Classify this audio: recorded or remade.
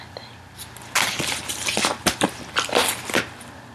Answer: recorded